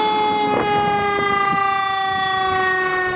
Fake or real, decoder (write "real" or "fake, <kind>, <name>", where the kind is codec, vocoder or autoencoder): real